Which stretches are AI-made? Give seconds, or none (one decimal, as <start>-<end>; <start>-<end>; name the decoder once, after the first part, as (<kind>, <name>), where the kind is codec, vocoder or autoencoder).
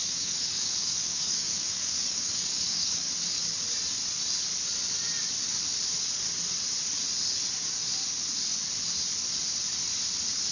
0.0-3.1 (codec, DAC)